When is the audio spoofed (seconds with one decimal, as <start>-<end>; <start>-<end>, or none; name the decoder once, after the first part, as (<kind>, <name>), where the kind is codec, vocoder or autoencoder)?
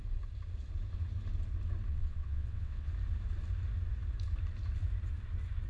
1.9-2.9 (vocoder, WaveNeXt)